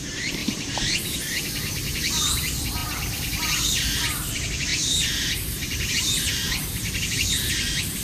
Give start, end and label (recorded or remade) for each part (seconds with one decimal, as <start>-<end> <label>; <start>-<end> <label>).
0.0-0.4 recorded; 0.4-1.1 remade; 1.1-4.7 recorded; 4.7-6.3 remade; 6.3-8.0 recorded